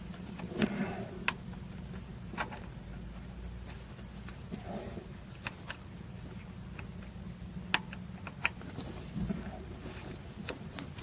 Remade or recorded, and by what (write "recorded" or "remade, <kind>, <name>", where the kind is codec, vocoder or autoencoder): recorded